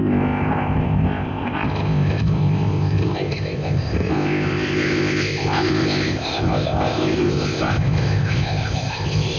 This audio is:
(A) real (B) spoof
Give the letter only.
B